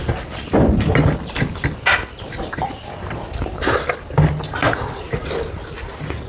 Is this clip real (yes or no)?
yes